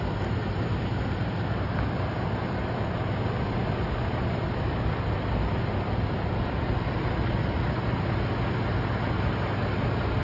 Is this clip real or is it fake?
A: real